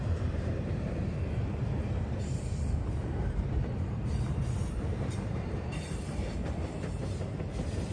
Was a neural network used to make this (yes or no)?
yes